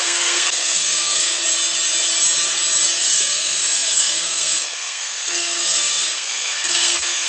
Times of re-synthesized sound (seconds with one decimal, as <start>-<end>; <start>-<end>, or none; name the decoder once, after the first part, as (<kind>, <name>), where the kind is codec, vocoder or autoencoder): 0.0-1.4 (codec, SNAC); 3.0-7.3